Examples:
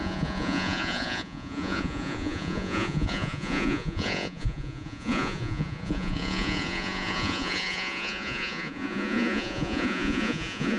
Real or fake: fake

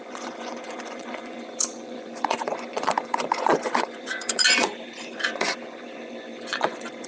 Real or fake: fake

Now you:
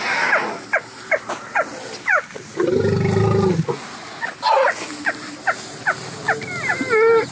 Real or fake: real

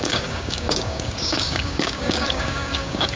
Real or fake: fake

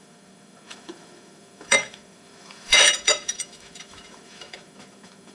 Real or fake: fake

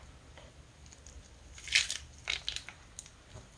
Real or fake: real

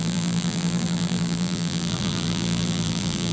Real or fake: fake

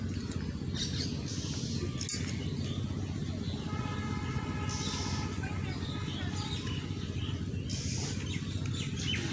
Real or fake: real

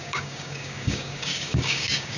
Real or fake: fake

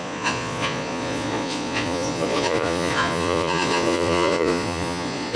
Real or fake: fake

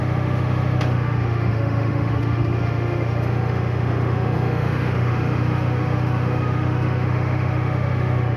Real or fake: fake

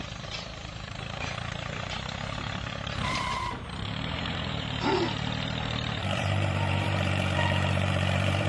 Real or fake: fake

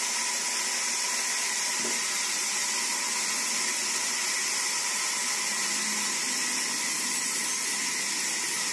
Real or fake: real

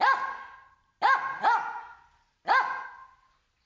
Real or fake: real